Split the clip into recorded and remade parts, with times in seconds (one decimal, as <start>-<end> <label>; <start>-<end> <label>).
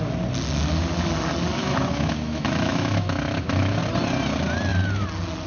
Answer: 0.0-1.6 recorded; 1.6-3.8 remade; 3.8-5.5 recorded